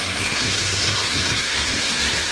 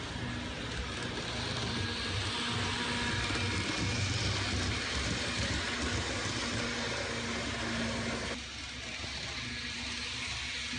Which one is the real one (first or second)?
second